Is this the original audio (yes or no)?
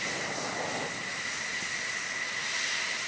yes